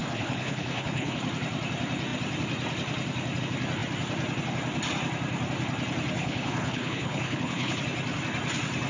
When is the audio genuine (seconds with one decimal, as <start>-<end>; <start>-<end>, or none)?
1.2-6.2; 7.8-8.9